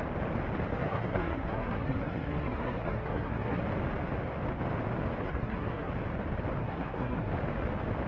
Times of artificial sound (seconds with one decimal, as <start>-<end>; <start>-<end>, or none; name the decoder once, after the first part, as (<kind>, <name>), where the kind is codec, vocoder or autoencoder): 0.7-3.6 (codec, SNAC); 5.2-5.9; 6.6-7.3